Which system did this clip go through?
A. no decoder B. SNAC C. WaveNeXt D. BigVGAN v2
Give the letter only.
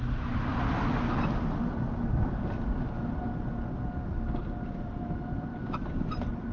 A